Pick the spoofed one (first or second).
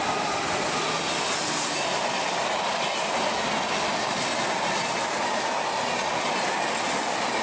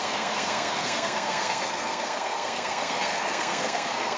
second